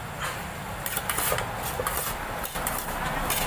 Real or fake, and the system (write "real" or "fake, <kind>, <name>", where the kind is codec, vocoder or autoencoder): real